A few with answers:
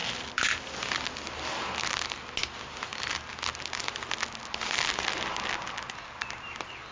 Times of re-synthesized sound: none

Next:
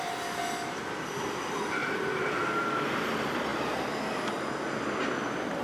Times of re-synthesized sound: none

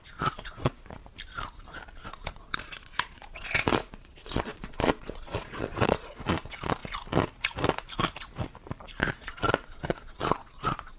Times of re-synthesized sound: 0.0-1.0 (vocoder, Vocos); 2.0-6.8; 9.0-11.0

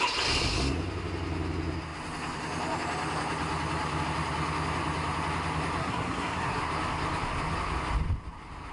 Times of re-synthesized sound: 5.8-6.6 (codec, SNAC)

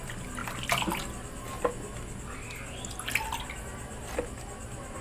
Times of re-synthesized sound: none